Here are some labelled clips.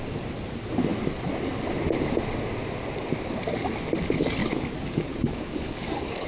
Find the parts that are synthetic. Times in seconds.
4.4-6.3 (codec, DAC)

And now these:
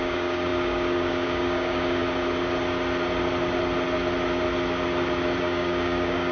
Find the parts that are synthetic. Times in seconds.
0.0-2.0 (codec, DAC); 5.4-6.3

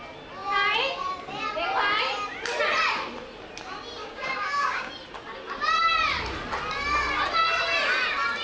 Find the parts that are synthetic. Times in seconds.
4.0-4.9 (codec, DAC)

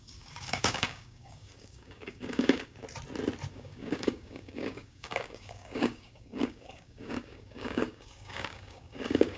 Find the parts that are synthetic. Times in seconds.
0.0-2.8 (codec, DAC); 3.5-9.4

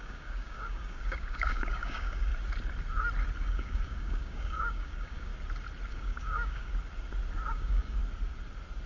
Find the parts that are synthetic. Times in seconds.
0.0-2.3 (codec, DAC); 3.4-5.3; 5.9-6.7; 7.5-8.0

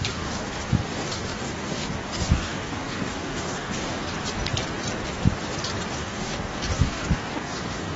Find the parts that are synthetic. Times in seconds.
0.0-4.1 (codec, DAC); 5.9-8.0

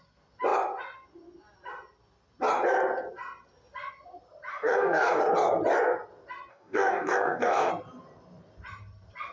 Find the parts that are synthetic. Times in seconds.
4.5-5.2 (codec, DAC); 6.5-7.7